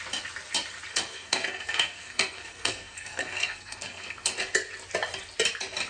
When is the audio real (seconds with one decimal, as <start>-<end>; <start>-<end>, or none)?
0.0-0.9; 4.4-5.9